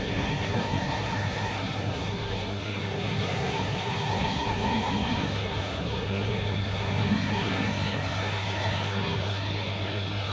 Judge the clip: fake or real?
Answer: fake